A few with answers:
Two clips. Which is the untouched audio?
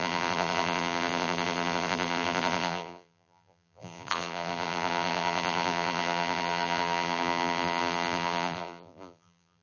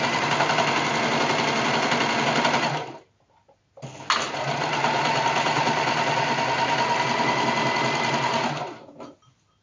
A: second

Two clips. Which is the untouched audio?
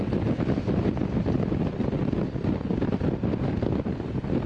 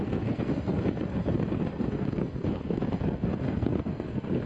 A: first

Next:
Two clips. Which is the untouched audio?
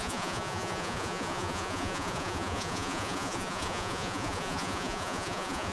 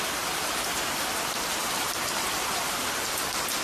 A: second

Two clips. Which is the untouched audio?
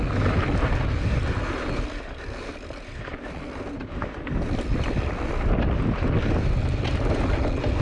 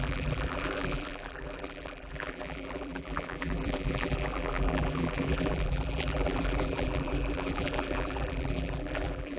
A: first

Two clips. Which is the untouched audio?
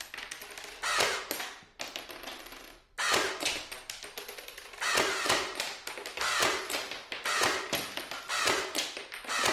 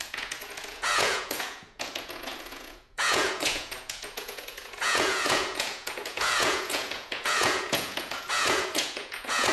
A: first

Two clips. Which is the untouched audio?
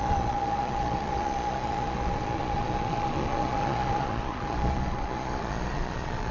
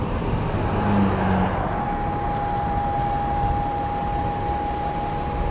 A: second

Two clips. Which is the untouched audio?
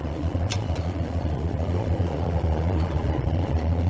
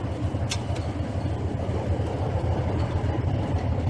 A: second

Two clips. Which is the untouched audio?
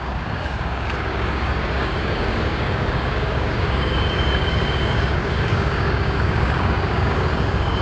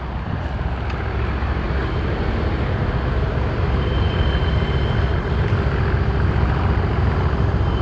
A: second